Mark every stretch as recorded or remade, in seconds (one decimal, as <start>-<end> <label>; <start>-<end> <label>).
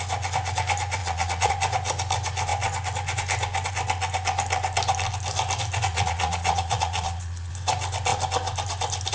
0.0-1.0 recorded; 1.0-1.5 remade; 1.5-5.9 recorded; 5.9-7.5 remade; 7.5-9.1 recorded